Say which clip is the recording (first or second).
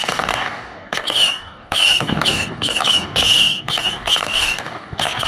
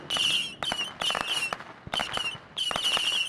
second